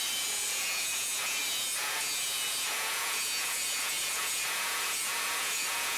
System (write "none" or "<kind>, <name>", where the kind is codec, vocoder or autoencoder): vocoder, Vocos